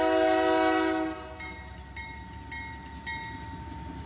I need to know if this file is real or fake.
real